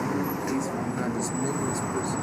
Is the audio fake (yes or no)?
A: no